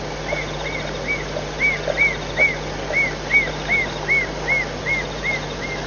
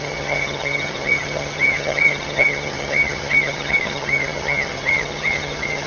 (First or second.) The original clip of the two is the first